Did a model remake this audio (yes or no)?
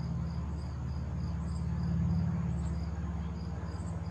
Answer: no